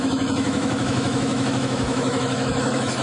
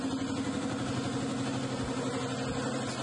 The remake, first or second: first